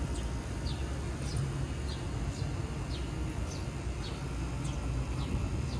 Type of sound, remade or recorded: recorded